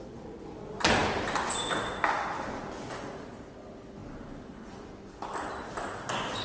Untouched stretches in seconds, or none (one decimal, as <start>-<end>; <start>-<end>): 0.0-6.4